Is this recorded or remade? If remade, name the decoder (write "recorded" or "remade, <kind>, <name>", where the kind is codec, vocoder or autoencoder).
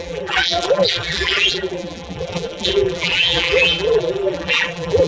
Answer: remade, vocoder, BigVGAN v2